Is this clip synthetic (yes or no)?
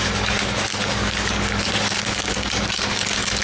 yes